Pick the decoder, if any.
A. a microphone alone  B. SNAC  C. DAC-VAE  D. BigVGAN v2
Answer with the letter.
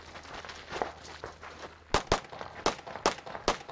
A